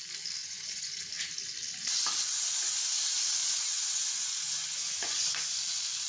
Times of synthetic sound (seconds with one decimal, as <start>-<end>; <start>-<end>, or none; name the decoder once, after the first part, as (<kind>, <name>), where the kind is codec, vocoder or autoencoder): 0.4-1.1 (vocoder, Vocos); 3.4-5.5

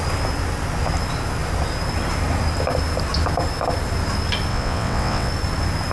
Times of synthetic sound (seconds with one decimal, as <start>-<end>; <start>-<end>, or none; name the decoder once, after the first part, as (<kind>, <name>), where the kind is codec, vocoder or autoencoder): 4.5-5.3 (vocoder, WaveNeXt)

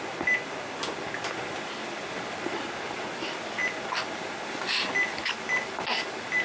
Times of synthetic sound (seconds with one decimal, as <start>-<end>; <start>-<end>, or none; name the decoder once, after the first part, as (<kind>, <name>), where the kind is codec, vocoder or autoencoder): none